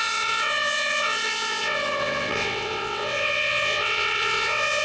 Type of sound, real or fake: fake